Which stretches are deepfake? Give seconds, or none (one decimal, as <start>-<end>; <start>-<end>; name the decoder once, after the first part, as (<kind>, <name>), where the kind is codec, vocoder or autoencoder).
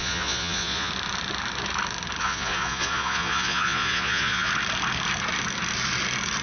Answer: 0.0-0.9 (vocoder, Vocos); 2.2-4.5